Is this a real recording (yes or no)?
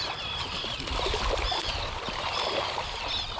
no